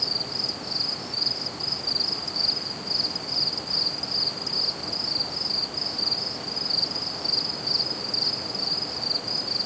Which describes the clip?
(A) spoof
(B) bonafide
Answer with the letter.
B